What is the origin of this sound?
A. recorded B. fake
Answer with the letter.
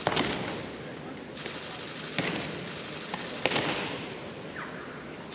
A